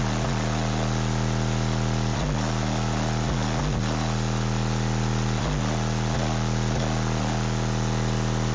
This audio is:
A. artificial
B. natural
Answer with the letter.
B